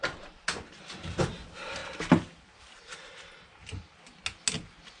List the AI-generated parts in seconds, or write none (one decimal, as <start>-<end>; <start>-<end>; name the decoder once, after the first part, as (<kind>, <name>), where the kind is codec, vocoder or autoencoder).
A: none